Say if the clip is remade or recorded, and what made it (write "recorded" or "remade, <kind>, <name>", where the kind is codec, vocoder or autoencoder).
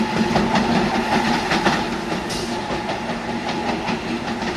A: recorded